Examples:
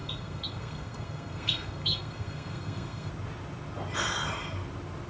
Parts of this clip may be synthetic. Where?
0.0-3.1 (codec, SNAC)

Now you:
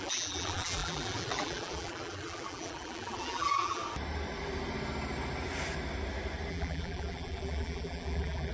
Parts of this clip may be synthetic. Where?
0.0-3.8 (vocoder, BigVGAN v2); 6.5-8.5

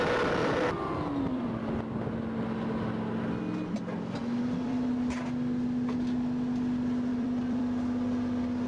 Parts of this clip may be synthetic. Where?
0.4-1.7 (vocoder, BigVGAN v2); 4.2-4.9; 7.1-7.6

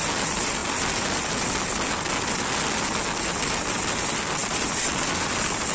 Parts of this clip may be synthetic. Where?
none